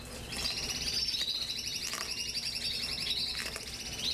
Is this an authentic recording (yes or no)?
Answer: yes